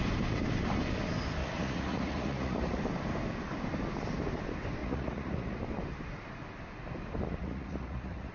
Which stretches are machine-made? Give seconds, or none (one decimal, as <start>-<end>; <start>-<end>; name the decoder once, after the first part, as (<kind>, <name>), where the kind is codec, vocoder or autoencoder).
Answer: 1.4-2.8 (vocoder, Vocos); 4.8-5.6; 7.4-8.3